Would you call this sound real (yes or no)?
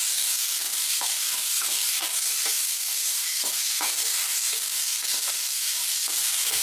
no